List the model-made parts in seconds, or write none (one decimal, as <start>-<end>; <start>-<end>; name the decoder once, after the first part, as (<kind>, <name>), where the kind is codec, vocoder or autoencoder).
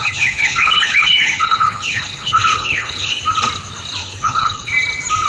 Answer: 0.0-3.2 (codec, HILCodec); 4.0-4.7